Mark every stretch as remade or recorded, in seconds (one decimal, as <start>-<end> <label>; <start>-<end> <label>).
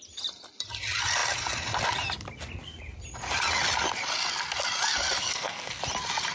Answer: 0.0-5.2 recorded; 5.2-5.8 remade; 5.8-6.3 recorded